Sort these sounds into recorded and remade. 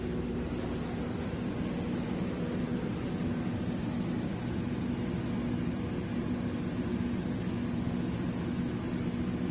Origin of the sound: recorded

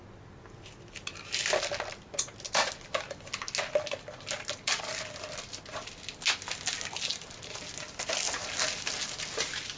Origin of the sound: recorded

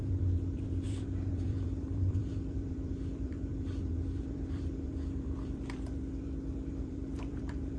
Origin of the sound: remade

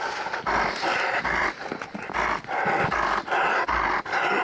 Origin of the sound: recorded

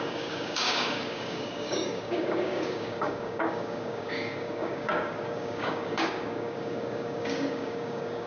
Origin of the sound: remade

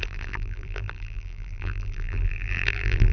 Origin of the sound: remade